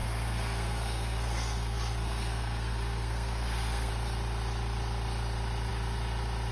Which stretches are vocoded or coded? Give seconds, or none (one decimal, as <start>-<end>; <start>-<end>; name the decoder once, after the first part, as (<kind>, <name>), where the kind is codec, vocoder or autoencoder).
0.0-3.9 (codec, SNAC)